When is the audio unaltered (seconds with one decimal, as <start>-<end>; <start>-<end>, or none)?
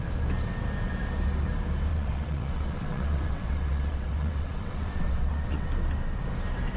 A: 0.0-1.9; 5.7-6.8